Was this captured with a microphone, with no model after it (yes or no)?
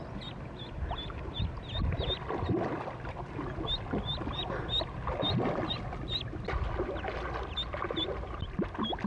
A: yes